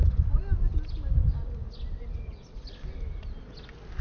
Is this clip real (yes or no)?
yes